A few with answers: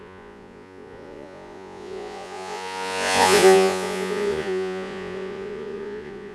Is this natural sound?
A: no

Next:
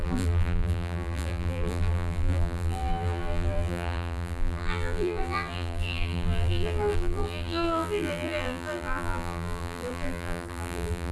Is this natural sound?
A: no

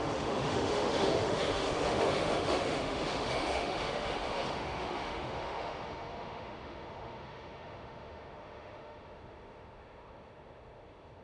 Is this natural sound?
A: no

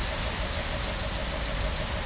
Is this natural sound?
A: yes